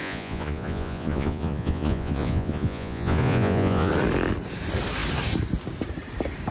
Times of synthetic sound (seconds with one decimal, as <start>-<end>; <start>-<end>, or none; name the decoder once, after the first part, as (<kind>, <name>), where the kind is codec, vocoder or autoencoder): 0.0-3.9 (vocoder, Vocos)